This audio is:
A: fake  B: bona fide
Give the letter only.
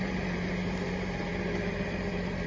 A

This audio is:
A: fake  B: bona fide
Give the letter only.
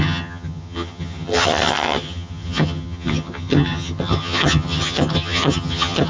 A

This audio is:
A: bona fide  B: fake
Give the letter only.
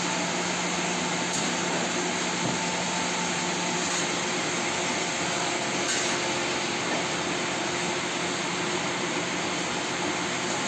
A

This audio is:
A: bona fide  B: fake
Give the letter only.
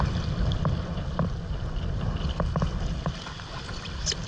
A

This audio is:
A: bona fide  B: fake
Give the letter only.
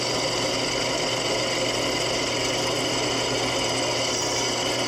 A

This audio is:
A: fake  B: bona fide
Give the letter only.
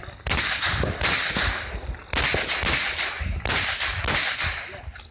B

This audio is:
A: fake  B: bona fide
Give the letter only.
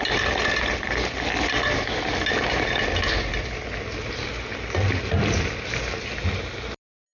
B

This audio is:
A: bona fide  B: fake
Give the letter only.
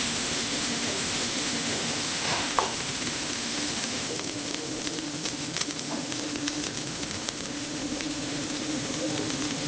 B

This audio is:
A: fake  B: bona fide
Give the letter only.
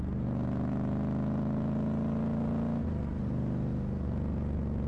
B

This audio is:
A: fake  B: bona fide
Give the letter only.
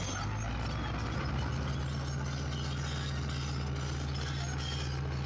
B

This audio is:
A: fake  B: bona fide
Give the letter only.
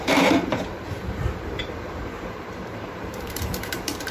A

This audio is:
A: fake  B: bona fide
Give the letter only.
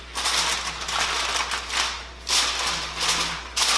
B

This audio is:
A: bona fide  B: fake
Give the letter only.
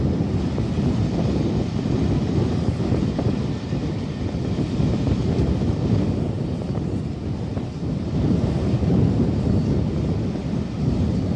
A